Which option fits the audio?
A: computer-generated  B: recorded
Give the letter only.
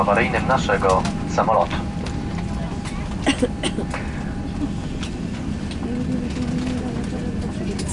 B